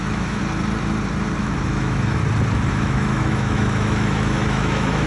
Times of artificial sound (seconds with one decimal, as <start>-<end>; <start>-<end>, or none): 0.0-0.4; 1.4-2.2; 2.7-5.1